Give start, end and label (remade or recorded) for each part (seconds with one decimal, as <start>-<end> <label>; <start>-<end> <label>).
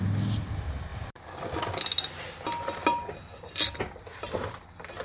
0.0-5.0 recorded